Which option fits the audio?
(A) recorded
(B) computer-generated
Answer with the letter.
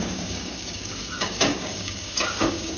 B